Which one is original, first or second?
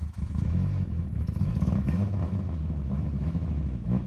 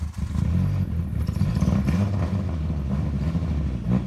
second